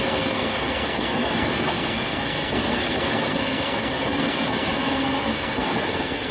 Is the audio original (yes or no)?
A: no